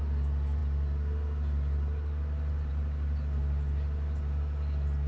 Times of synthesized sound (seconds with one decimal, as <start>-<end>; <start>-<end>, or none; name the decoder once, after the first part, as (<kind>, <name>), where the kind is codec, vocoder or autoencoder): none